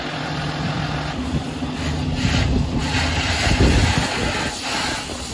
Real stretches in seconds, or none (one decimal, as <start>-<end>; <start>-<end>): 0.0-5.3